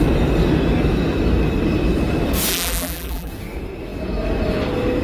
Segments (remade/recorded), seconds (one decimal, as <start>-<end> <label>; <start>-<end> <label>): 0.0-2.5 recorded; 2.5-3.3 remade; 3.3-5.0 recorded